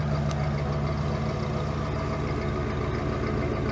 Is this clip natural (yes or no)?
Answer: yes